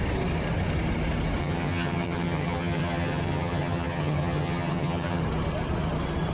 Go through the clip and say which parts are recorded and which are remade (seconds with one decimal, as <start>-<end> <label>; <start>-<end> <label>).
0.0-1.4 recorded; 1.4-5.2 remade; 5.2-6.3 recorded

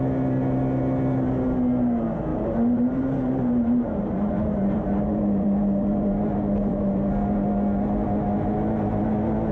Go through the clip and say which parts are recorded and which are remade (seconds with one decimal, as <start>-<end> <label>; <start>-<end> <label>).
0.0-2.3 recorded; 2.3-7.1 remade; 7.1-9.5 recorded

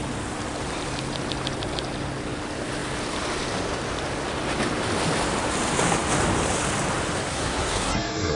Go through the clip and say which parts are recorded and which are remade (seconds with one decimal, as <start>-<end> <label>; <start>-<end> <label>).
0.0-7.3 recorded; 7.3-8.4 remade

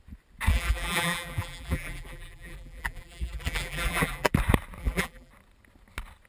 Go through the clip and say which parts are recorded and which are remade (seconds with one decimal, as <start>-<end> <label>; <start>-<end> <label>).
0.0-0.5 recorded; 0.5-4.3 remade; 4.3-4.8 recorded; 4.8-5.3 remade; 5.3-6.3 recorded

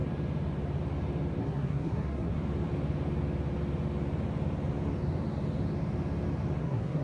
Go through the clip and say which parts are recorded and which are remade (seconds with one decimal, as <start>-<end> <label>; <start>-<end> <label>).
0.0-1.4 recorded; 1.4-2.4 remade; 2.4-6.6 recorded; 6.6-7.0 remade

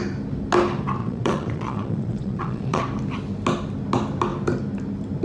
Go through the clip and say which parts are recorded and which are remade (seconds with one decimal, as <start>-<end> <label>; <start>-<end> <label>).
0.0-1.0 recorded; 1.0-2.8 remade; 2.8-5.2 recorded

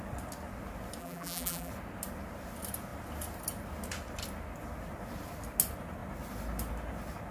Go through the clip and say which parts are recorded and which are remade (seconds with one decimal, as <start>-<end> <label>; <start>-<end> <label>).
0.0-1.0 recorded; 1.0-1.7 remade; 1.7-7.3 recorded